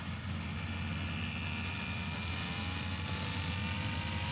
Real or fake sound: real